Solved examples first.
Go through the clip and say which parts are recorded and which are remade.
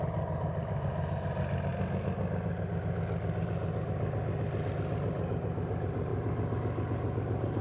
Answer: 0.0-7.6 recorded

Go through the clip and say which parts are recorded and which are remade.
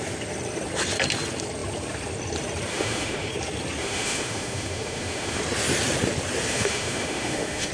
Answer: 0.0-2.7 recorded; 2.7-3.3 remade; 3.3-3.8 recorded; 3.8-5.4 remade; 5.4-6.5 recorded; 6.5-7.7 remade